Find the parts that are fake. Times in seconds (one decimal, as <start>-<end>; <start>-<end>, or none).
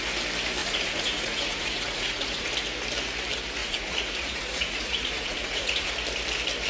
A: 0.6-2.5; 3.6-5.9